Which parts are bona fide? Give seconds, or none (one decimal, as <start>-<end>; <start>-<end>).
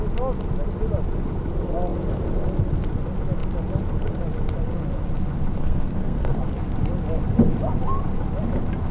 0.0-5.6; 6.4-8.9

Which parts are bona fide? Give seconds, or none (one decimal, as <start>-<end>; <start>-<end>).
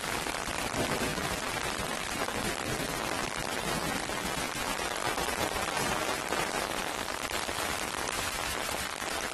0.0-5.0; 8.3-9.3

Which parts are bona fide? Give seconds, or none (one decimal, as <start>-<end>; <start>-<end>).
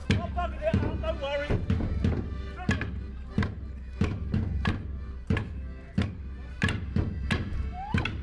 0.0-8.2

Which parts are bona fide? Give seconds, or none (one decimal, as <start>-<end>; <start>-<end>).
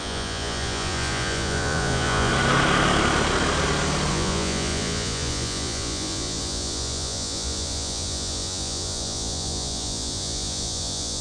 2.3-4.1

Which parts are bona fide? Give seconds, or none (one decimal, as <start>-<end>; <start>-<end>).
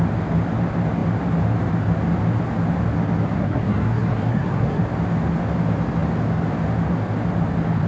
0.0-3.4; 4.8-7.9